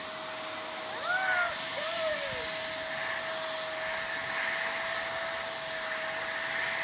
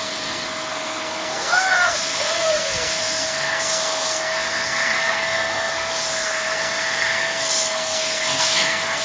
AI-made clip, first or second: second